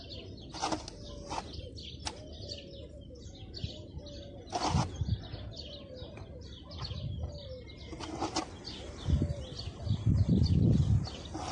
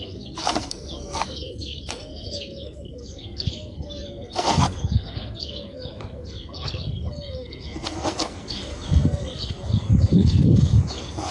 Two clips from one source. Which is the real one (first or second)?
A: first